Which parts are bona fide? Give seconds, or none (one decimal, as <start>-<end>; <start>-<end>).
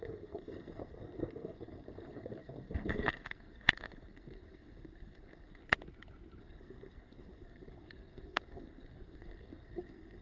5.6-6.4